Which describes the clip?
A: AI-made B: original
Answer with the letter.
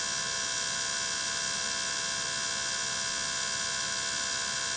B